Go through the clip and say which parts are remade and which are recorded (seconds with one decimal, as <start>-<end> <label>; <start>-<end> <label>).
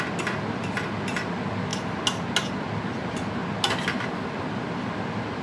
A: 0.0-5.4 recorded